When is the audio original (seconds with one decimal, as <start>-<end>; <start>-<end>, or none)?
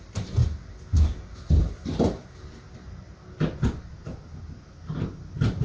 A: 0.0-5.6